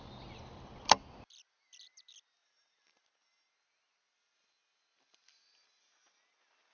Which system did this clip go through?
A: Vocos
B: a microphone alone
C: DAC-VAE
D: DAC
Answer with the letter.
B